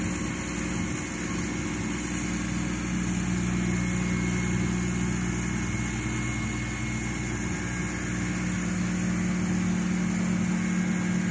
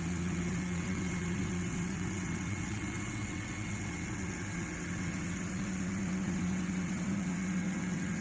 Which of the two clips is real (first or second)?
first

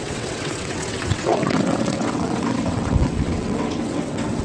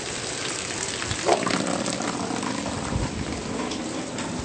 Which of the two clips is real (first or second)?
second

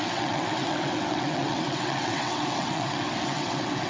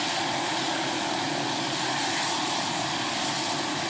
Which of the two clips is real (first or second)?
second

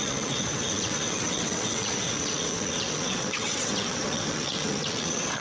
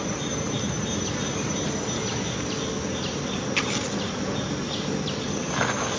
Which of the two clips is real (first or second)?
second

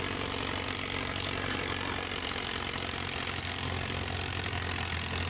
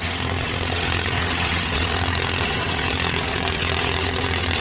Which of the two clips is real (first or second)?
first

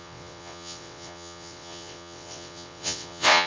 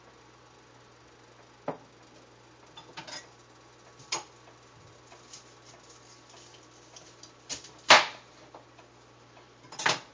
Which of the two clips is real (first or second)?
second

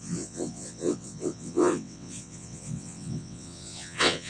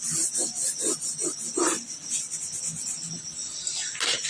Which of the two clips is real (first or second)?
second